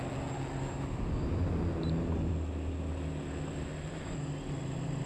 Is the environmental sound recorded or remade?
recorded